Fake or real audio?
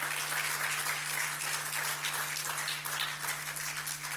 real